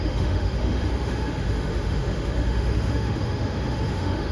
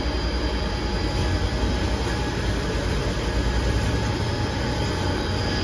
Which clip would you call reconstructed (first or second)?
first